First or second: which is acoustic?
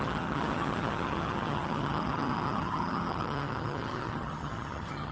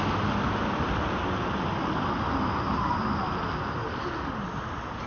second